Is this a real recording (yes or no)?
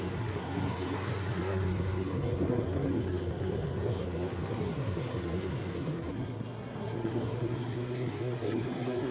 no